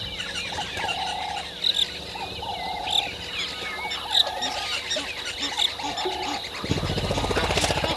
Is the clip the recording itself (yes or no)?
yes